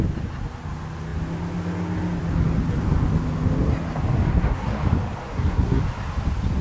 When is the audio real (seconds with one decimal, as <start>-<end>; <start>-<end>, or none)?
0.0-4.3; 4.8-5.3; 5.8-6.6